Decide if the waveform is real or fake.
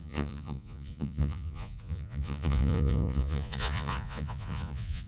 fake